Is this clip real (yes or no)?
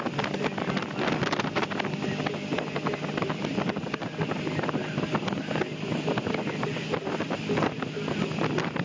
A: yes